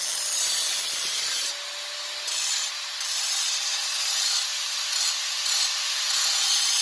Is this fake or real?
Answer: real